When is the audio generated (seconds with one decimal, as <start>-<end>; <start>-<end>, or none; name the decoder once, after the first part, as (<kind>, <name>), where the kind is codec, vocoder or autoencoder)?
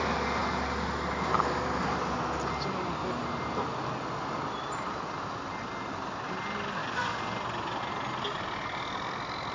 none